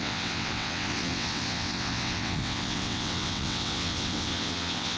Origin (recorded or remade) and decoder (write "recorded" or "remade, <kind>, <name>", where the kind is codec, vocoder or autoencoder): remade, vocoder, WaveNeXt